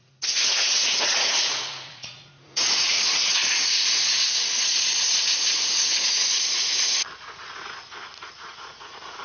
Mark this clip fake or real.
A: fake